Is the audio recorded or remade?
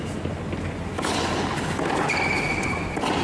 recorded